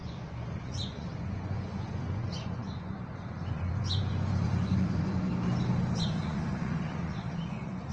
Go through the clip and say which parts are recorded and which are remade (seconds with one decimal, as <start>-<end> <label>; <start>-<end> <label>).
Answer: 0.0-5.3 remade; 5.3-6.0 recorded; 6.0-7.9 remade